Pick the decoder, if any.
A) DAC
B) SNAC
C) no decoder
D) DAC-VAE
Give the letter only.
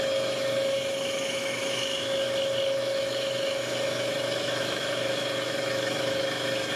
D